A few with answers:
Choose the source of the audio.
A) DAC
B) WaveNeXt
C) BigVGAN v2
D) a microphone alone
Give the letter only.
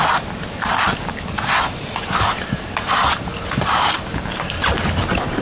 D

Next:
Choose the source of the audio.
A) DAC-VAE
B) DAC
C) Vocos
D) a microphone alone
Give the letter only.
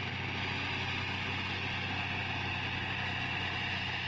D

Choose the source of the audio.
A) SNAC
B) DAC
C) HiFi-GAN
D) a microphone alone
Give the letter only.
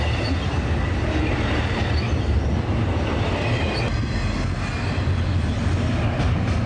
D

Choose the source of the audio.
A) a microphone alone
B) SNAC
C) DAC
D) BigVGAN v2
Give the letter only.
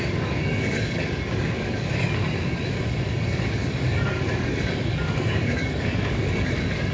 C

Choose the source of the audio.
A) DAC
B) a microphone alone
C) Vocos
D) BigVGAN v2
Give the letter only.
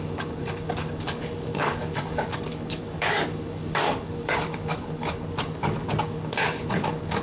A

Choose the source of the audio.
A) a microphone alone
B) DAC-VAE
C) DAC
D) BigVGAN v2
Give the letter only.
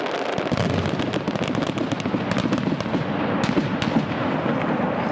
A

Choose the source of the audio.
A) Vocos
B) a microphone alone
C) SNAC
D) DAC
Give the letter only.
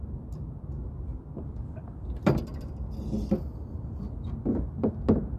B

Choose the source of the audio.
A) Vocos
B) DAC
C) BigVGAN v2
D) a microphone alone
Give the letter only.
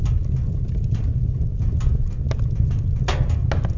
D